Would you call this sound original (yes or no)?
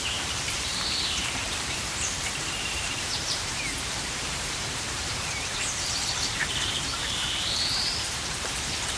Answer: no